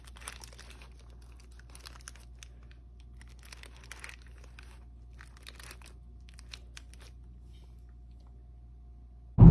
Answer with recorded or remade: recorded